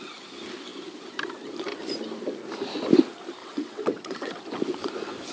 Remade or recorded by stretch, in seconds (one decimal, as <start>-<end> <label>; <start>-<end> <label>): 0.0-3.4 recorded; 3.4-4.3 remade; 4.3-5.3 recorded